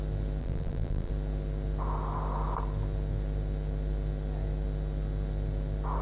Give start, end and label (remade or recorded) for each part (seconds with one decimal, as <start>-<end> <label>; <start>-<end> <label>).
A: 0.0-0.4 recorded; 0.4-1.1 remade; 1.1-6.0 recorded